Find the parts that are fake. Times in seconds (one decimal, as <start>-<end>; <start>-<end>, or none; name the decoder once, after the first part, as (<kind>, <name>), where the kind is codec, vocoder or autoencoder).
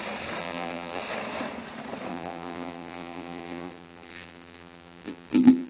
0.4-1.0 (vocoder, BigVGAN v2); 2.1-5.7